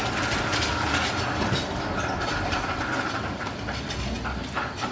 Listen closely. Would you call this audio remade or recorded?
recorded